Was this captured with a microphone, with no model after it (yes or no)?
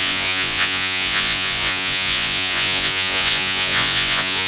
no